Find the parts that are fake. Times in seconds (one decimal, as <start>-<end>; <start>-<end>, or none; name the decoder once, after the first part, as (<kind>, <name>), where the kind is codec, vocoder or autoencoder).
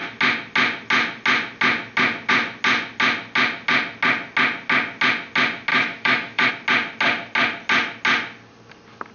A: 5.7-6.5 (autoencoder, DAC-VAE)